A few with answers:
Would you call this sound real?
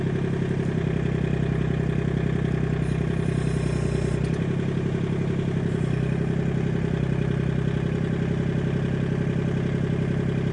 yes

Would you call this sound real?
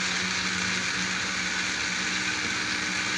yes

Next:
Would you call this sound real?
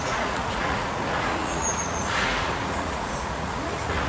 no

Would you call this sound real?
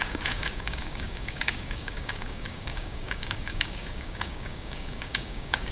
no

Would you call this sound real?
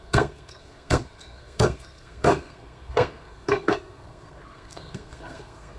no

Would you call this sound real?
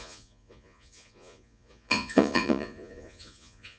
no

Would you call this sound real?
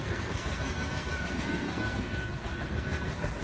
no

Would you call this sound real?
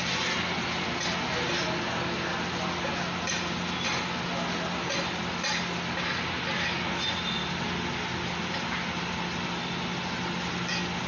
yes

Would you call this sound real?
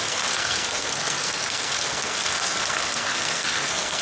no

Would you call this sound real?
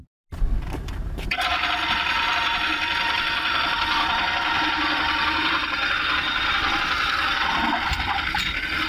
no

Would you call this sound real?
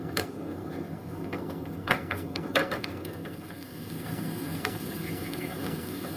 no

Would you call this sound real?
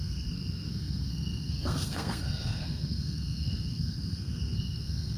no